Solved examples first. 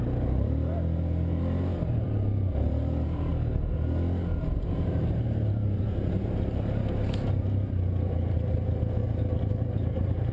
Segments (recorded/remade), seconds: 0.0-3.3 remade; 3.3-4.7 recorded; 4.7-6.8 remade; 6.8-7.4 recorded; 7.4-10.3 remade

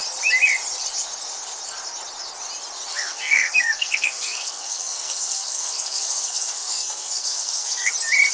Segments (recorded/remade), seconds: 0.0-2.9 recorded; 2.9-7.9 remade; 7.9-8.3 recorded

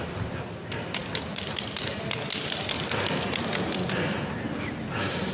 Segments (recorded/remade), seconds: 0.0-5.3 recorded

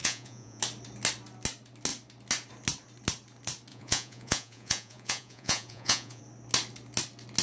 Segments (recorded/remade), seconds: 0.0-0.6 remade; 0.6-3.7 recorded; 3.7-6.2 remade; 6.2-7.4 recorded

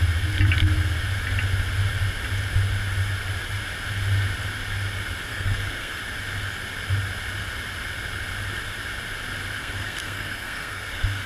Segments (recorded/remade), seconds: 0.0-5.3 recorded; 5.3-6.0 remade; 6.0-9.6 recorded; 9.6-11.3 remade